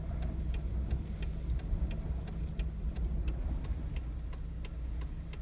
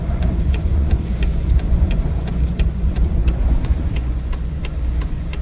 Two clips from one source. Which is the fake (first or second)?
second